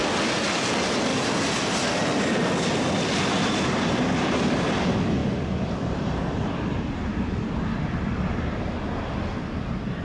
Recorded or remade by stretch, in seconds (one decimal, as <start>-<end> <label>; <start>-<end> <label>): 0.0-1.1 recorded; 1.1-1.7 remade; 1.7-5.2 recorded; 5.2-8.7 remade; 8.7-10.0 recorded